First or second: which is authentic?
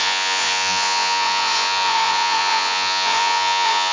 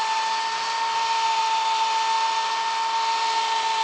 second